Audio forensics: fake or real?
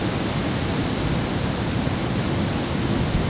real